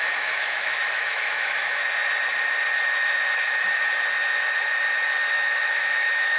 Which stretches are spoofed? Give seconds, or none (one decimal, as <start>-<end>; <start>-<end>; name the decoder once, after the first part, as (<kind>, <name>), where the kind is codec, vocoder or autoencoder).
0.0-1.8 (autoencoder, DAC-VAE); 5.3-6.4